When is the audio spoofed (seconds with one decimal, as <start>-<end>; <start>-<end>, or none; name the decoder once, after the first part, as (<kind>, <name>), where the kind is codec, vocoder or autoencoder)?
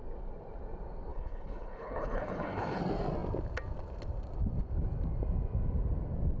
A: 1.1-2.8 (codec, HILCodec)